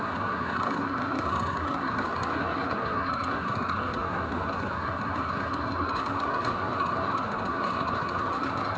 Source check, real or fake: fake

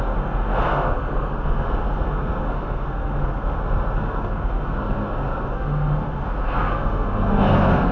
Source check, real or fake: fake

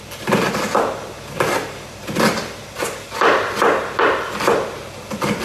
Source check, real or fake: real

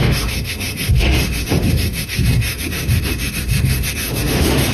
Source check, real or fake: fake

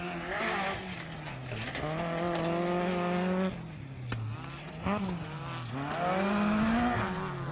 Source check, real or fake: real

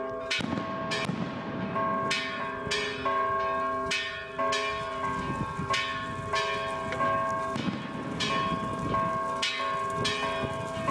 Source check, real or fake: real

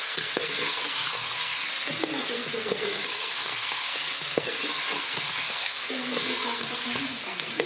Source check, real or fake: fake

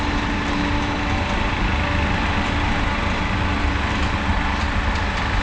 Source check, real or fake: real